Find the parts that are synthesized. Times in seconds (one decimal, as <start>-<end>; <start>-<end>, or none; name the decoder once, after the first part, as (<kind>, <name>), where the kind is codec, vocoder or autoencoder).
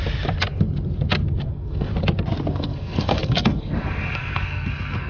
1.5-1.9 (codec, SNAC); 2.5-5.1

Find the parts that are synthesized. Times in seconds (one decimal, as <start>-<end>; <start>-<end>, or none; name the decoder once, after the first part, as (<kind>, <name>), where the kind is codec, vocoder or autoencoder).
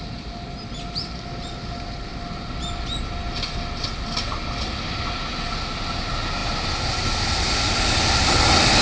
none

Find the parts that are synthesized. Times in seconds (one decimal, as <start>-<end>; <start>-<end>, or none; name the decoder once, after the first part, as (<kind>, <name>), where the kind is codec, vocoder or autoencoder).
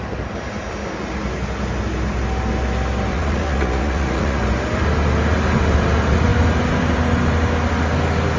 3.1-4.4 (vocoder, Vocos)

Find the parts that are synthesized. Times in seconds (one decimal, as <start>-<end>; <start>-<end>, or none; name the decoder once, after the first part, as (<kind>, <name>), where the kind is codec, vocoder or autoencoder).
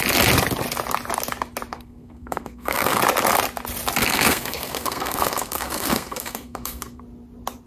1.7-3.0 (codec, SNAC); 4.0-7.0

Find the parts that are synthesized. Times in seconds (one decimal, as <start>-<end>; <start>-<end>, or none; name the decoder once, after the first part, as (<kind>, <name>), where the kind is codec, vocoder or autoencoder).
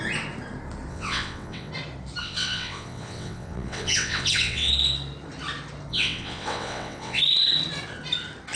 0.9-1.7 (vocoder, WaveNeXt); 2.2-4.7; 5.9-7.2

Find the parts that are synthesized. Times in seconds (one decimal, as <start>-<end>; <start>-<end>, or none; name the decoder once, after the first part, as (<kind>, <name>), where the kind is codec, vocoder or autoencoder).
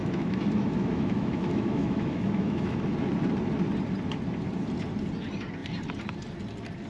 0.0-2.8 (autoencoder, DAC-VAE)